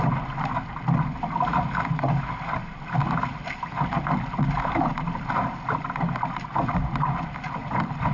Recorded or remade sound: recorded